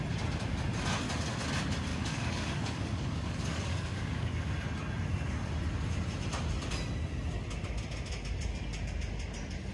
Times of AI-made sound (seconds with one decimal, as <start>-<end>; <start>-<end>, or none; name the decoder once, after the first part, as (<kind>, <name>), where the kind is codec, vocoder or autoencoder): 1.9-4.5 (codec, DAC)